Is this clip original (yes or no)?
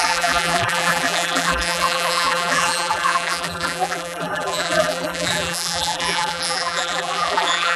no